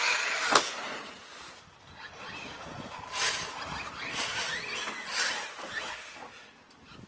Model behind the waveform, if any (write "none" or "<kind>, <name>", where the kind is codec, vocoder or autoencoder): none